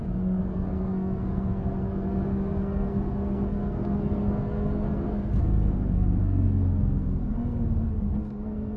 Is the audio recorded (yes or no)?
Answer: no